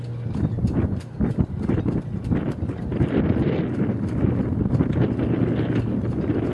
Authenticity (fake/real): real